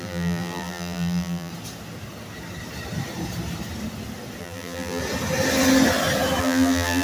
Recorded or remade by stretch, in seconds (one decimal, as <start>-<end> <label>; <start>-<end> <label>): 0.0-1.5 remade; 1.5-4.4 recorded; 4.4-5.0 remade; 5.0-6.4 recorded; 6.4-7.0 remade